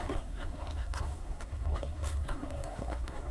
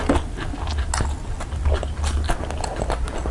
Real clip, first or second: second